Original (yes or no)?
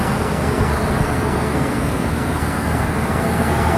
no